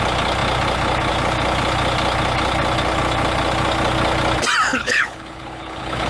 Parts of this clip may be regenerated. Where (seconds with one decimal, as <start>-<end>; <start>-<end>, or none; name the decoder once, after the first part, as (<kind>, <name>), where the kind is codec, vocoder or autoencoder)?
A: 4.7-6.1 (codec, HILCodec)